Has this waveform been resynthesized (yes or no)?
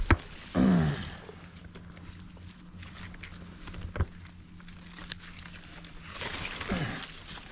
no